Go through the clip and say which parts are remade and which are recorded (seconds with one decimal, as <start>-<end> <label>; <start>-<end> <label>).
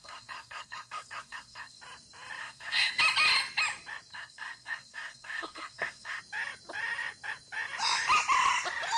0.0-1.8 remade; 1.8-2.4 recorded; 2.4-2.9 remade; 2.9-4.1 recorded; 4.1-6.2 remade; 6.2-9.0 recorded